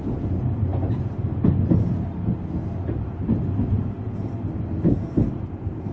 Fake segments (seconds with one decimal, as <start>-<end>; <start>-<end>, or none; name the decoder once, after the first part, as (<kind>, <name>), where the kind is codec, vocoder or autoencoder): none